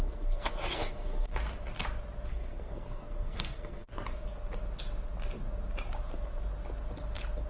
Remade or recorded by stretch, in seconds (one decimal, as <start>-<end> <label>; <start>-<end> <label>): 0.0-1.3 remade; 1.3-2.3 recorded; 2.3-3.9 remade; 3.9-7.5 recorded